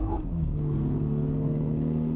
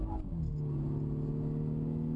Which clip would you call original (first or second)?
second